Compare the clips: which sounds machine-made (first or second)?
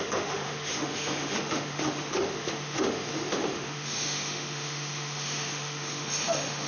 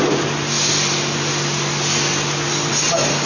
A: first